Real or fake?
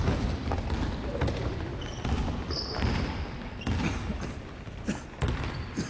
real